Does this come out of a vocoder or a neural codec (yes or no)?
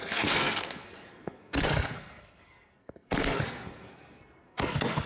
yes